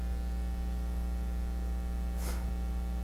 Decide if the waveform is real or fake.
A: real